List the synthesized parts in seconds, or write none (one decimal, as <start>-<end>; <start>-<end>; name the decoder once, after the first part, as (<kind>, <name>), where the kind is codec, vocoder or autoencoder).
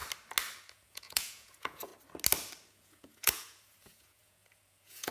0.7-1.9 (vocoder, Vocos); 2.7-5.1